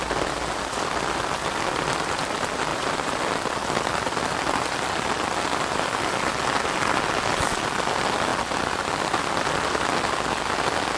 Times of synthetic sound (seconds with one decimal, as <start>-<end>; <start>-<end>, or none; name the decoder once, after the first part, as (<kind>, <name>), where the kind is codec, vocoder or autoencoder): 2.7-3.3 (vocoder, BigVGAN v2)